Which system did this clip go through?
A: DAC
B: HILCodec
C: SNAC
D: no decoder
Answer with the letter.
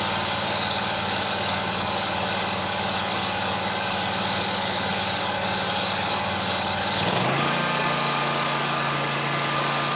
A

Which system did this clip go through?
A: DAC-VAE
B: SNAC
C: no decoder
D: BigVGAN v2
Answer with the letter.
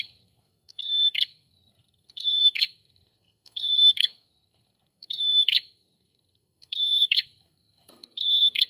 B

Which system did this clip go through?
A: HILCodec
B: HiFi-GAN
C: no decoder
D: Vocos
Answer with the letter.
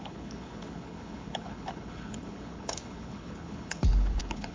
A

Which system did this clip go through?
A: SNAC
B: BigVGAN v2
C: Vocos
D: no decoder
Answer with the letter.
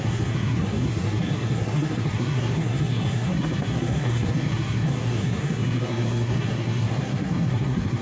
A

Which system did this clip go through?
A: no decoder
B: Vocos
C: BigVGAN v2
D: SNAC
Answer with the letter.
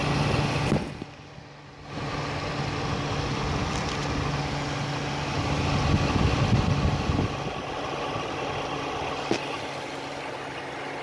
A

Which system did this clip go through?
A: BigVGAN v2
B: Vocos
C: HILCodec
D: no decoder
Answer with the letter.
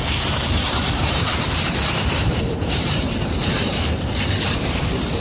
A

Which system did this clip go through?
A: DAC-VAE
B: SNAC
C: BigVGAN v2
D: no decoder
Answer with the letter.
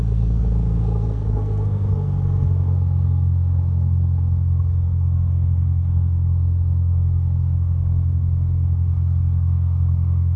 B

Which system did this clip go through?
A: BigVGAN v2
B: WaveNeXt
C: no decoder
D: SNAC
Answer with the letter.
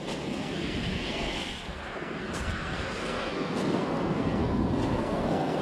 D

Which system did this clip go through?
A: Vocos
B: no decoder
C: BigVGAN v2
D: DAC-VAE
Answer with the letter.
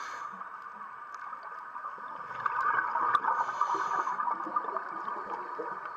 B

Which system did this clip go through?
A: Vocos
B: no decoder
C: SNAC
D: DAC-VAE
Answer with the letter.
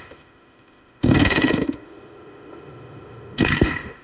D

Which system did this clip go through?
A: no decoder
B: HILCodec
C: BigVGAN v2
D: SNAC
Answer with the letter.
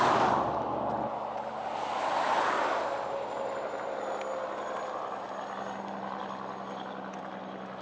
A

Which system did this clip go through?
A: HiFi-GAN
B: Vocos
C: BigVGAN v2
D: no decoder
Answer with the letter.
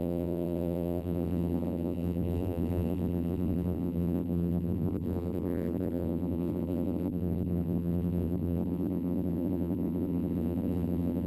C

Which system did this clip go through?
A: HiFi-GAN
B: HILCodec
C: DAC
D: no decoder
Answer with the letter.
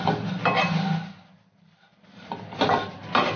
D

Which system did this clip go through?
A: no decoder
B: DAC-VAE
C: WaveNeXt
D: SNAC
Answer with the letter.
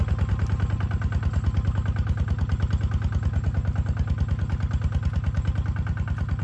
A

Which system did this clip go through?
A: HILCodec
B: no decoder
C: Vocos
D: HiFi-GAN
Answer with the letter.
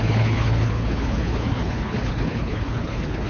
A